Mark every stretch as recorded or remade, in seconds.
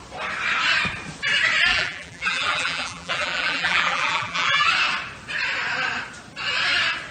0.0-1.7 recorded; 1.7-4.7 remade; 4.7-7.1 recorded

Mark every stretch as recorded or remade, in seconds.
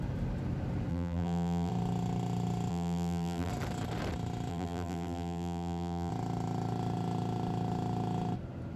0.0-0.9 recorded; 0.9-1.7 remade; 1.7-2.7 recorded; 2.7-3.5 remade; 3.5-4.5 recorded; 4.5-6.1 remade; 6.1-8.8 recorded